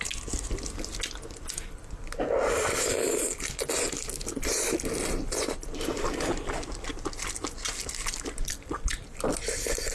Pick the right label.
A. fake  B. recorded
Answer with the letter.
B